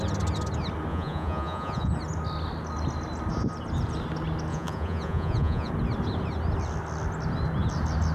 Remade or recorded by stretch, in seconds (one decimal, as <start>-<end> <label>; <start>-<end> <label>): 0.0-0.9 recorded; 0.9-1.9 remade; 1.9-4.5 recorded; 4.5-5.7 remade; 5.7-8.1 recorded

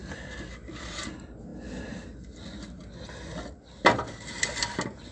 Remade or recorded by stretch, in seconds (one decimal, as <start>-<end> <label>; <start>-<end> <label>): 0.0-5.1 recorded

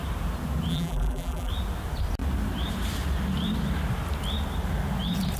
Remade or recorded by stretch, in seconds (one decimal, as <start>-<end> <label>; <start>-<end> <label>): 0.0-0.7 recorded; 0.7-1.5 remade; 1.5-5.4 recorded

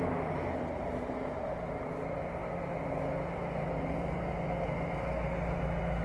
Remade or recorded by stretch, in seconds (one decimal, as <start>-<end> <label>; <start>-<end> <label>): 0.0-6.0 recorded

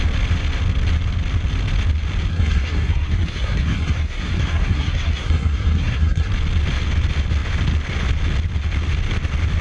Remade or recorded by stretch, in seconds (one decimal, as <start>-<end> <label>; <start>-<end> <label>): 0.0-2.3 recorded; 2.3-6.3 remade; 6.3-9.6 recorded

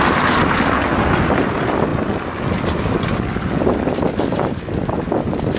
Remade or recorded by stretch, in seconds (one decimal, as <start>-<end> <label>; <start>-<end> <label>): 0.0-5.6 recorded